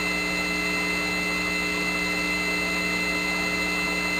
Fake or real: real